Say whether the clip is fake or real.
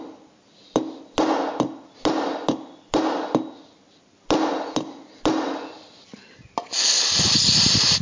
real